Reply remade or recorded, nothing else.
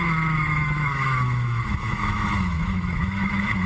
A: remade